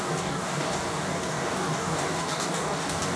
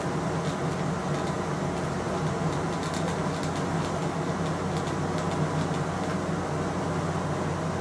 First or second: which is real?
second